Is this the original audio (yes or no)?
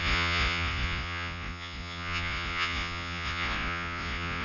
no